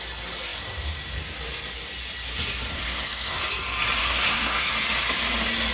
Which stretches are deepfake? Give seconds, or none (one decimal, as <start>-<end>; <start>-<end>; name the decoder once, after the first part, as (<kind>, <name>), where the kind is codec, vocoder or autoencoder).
2.7-3.4 (codec, SNAC); 4.0-4.7